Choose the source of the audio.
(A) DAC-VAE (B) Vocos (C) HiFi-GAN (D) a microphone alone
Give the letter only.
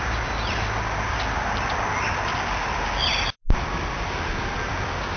D